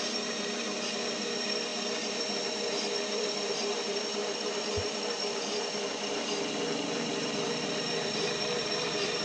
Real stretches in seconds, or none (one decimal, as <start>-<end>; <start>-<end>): none